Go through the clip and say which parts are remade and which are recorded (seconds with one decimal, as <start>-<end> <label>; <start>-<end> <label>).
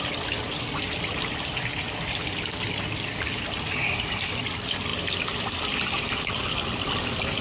0.0-7.4 recorded